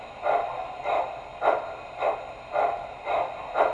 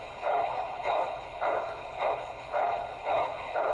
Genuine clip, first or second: first